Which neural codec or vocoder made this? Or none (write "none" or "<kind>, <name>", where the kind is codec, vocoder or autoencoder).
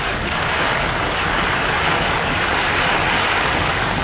codec, DAC